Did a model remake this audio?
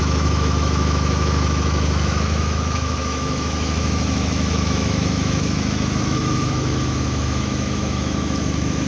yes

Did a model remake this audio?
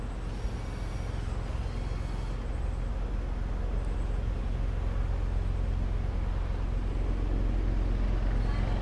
no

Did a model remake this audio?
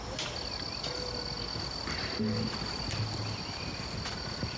no